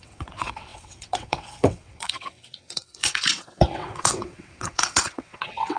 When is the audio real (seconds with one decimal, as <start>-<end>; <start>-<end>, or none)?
none